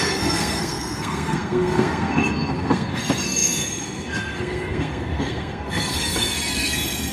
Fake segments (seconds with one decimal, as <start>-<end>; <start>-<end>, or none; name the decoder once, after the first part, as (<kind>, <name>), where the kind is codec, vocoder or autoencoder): 0.0-7.1 (codec, SNAC)